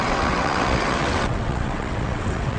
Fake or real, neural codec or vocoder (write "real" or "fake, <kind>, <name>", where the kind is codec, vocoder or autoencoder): fake, vocoder, WaveNeXt